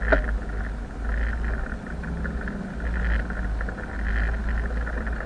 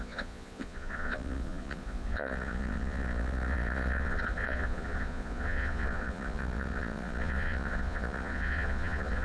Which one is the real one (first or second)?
first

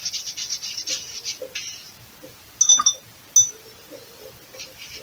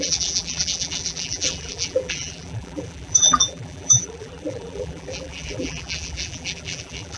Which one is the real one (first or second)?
first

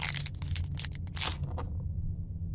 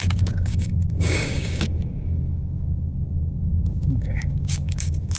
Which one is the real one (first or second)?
first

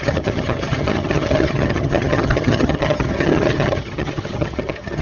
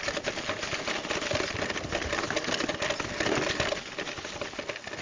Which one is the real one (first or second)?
second